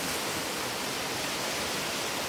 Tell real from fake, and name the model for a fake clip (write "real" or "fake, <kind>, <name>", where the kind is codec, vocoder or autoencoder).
real